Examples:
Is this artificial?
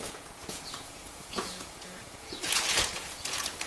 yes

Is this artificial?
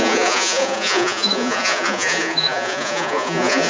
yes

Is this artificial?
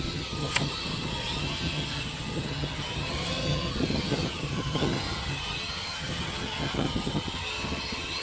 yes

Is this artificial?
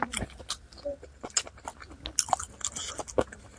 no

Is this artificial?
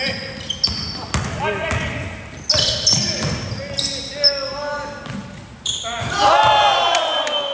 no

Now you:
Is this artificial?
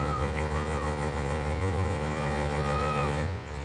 yes